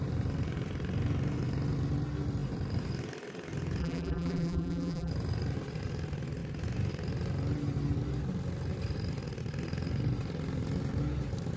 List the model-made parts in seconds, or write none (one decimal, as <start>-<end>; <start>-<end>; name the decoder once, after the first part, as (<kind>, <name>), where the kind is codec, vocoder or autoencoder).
3.8-5.1 (vocoder, BigVGAN v2)